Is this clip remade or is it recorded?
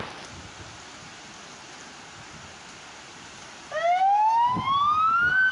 recorded